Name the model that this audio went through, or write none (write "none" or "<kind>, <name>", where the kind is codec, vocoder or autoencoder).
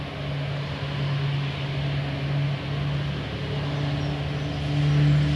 none